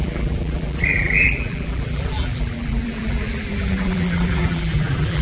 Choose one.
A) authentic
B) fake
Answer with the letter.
B